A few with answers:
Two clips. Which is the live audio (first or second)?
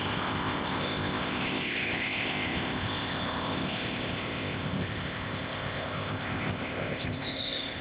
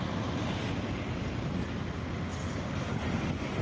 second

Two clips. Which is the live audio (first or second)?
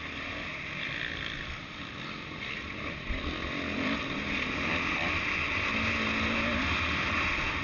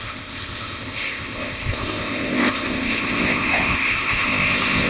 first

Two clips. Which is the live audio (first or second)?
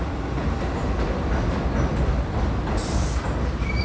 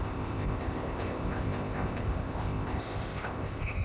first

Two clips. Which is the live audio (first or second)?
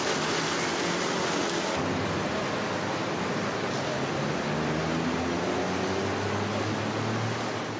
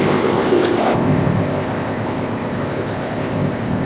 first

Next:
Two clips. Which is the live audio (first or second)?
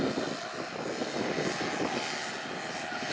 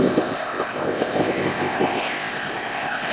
first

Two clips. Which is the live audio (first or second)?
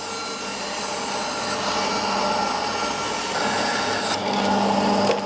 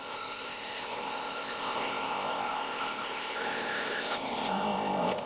first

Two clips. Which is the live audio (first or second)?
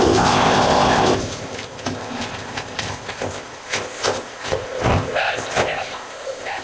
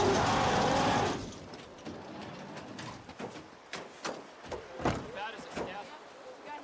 second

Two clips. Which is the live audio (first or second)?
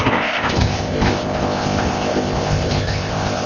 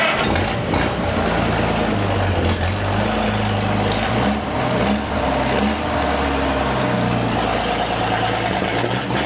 second